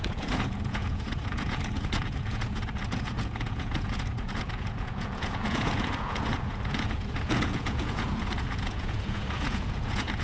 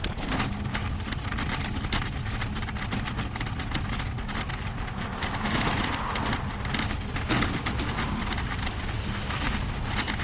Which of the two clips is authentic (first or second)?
second